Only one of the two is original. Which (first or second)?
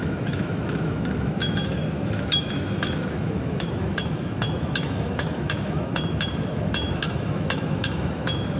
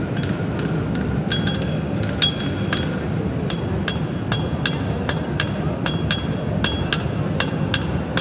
second